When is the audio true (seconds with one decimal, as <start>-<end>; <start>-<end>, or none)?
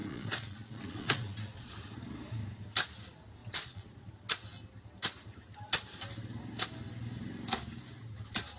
1.7-3.4; 4.1-8.6